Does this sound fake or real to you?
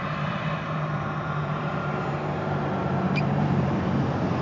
fake